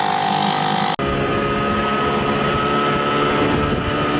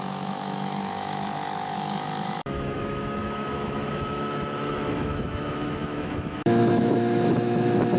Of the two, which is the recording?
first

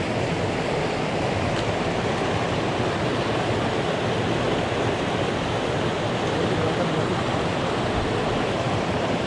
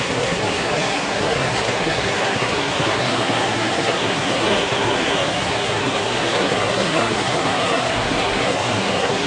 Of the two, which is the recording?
first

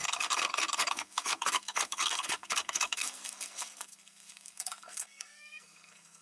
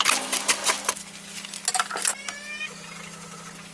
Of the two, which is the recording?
second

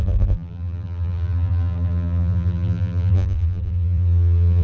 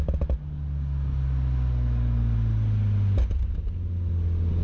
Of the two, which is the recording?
second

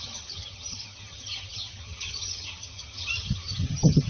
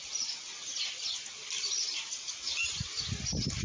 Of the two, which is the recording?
second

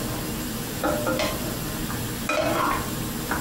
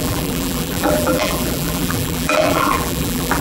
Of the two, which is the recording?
first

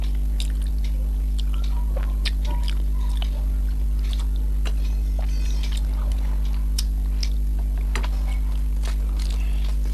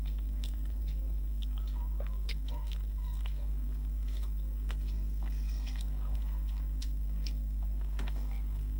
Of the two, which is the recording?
first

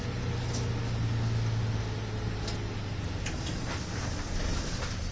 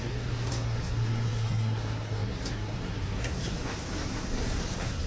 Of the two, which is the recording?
first